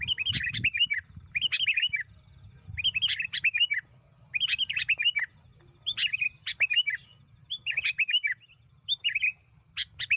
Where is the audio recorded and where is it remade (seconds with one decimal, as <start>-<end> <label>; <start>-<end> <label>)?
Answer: 0.0-10.2 recorded